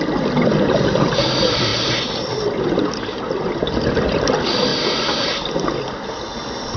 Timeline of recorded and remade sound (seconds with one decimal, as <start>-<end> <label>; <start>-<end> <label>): 0.0-6.8 recorded